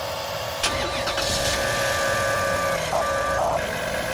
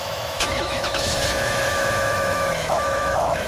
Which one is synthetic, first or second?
second